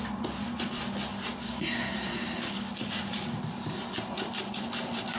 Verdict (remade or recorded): recorded